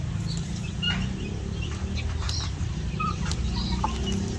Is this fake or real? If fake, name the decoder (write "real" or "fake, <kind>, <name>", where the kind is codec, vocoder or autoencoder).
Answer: real